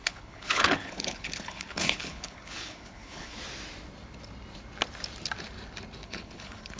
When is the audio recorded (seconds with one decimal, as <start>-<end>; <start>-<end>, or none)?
3.4-6.0